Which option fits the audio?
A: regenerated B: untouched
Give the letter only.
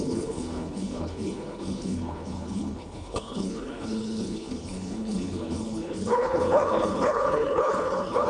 A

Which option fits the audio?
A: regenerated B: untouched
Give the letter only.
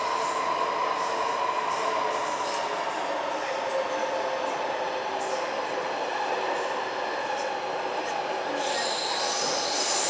B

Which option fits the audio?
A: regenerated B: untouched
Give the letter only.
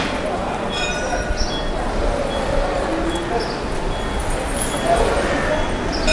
B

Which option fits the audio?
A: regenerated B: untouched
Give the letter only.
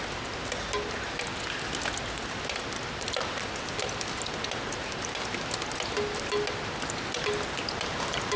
B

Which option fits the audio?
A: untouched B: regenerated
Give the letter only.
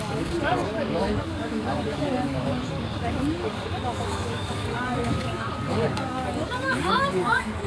B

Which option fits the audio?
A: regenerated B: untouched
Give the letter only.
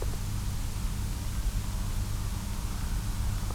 B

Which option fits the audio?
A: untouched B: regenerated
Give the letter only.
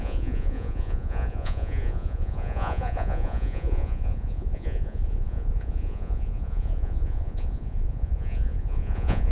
B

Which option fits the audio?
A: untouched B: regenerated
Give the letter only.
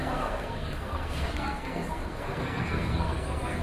B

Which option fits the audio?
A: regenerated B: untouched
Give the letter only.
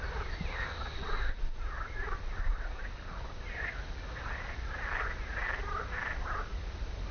B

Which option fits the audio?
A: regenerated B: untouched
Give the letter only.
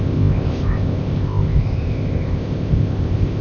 A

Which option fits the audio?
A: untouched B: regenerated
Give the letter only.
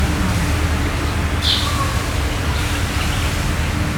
A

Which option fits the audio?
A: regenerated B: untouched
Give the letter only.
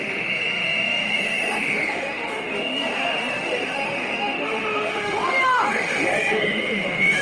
A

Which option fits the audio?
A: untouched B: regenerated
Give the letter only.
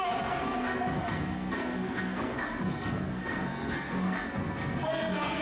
B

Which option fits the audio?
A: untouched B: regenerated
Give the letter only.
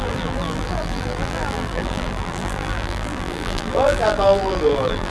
B